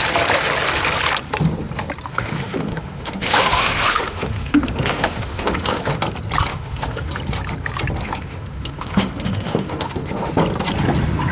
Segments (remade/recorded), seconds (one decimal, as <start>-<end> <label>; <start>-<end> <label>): 0.0-2.1 recorded; 2.1-6.0 remade; 6.0-6.5 recorded; 6.5-7.1 remade; 7.1-8.0 recorded; 8.0-10.3 remade; 10.3-11.3 recorded